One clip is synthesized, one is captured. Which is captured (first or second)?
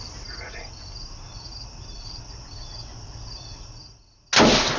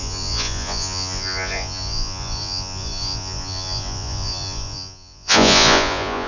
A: first